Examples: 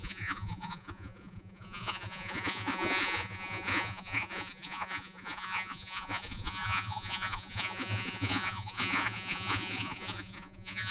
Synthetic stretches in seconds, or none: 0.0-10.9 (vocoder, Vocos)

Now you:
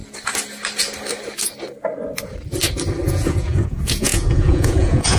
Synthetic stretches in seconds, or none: 3.1-5.2 (vocoder, Vocos)

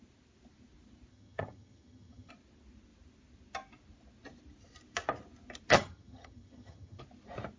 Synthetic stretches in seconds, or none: 1.1-2.3 (vocoder, HiFi-GAN); 5.7-7.0

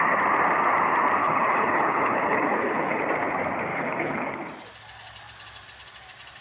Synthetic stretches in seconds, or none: 1.2-3.0 (codec, HILCodec); 3.7-4.3

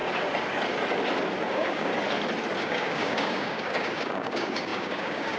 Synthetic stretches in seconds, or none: 1.5-1.9 (codec, DAC); 2.6-5.4

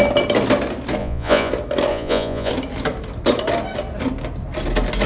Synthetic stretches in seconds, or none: 1.0-1.5 (vocoder, Vocos); 1.9-2.5

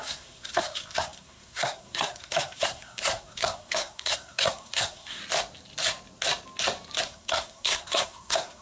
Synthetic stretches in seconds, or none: 0.0-5.2 (codec, SNAC); 7.0-8.6